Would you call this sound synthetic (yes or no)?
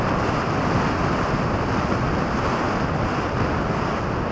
no